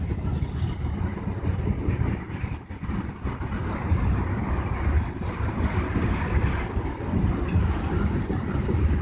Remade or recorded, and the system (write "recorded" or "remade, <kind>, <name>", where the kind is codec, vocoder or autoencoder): recorded